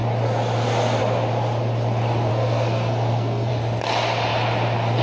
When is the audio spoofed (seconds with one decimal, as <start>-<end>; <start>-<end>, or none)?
2.3-3.5